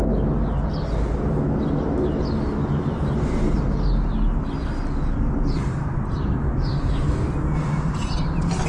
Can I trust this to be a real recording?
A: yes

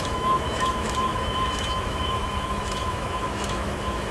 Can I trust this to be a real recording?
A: no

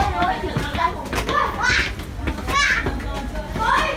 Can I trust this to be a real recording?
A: yes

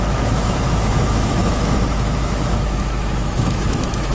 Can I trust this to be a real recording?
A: no